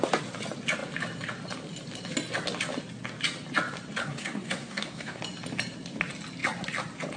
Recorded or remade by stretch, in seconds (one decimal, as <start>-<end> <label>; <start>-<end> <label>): 0.0-4.0 recorded; 4.0-5.2 remade; 5.2-7.2 recorded